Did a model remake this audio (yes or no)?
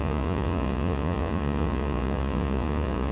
yes